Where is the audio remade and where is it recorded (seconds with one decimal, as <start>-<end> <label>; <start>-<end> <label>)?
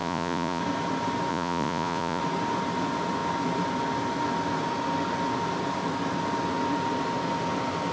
0.0-0.6 remade; 0.6-1.3 recorded; 1.3-2.2 remade; 2.2-7.9 recorded